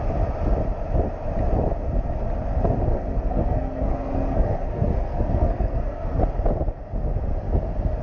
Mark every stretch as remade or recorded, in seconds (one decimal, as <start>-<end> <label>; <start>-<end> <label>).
0.0-2.9 recorded; 2.9-6.2 remade; 6.2-8.0 recorded